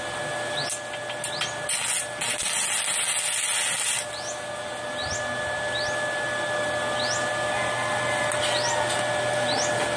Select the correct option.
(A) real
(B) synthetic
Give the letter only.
A